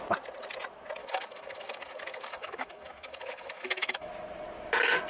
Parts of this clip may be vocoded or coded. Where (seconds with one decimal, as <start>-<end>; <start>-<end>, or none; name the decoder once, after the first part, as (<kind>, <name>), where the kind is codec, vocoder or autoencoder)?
1.0-4.1 (autoencoder, DAC-VAE)